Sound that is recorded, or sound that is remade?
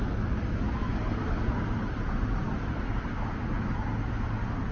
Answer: recorded